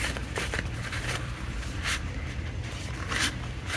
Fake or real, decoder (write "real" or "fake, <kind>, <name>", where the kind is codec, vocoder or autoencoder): fake, vocoder, BigVGAN v2